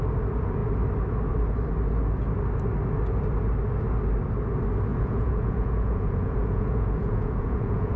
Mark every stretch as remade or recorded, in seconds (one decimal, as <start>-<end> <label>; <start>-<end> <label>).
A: 0.0-4.9 recorded; 4.9-8.0 remade